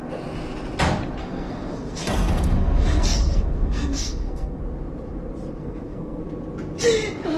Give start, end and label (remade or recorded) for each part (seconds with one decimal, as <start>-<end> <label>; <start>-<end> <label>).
0.0-1.2 recorded; 1.2-4.6 remade; 4.6-5.6 recorded; 5.6-6.2 remade; 6.2-7.4 recorded